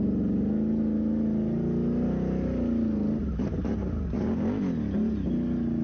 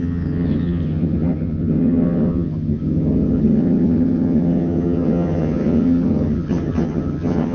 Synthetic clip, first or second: second